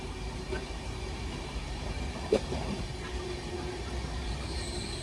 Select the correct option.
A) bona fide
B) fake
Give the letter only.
B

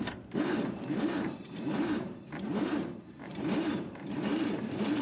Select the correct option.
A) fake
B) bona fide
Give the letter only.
A